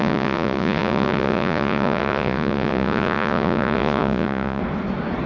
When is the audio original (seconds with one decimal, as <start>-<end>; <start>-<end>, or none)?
4.6-5.3